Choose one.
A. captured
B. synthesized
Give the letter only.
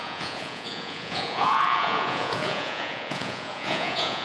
B